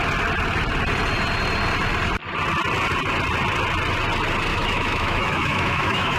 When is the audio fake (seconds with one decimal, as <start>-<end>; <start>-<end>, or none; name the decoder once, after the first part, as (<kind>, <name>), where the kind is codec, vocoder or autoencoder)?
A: 4.5-6.2 (autoencoder, DAC-VAE)